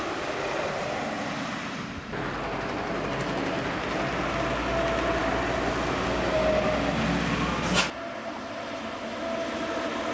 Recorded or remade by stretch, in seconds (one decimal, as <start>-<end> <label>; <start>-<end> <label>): 0.0-10.1 recorded